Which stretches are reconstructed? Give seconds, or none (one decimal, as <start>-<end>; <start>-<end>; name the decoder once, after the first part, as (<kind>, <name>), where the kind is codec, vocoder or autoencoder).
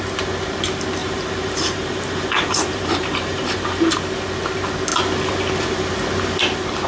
1.0-4.0 (vocoder, BigVGAN v2)